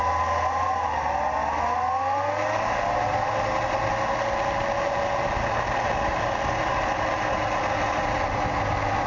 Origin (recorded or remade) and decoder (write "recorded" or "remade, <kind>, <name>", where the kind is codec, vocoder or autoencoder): recorded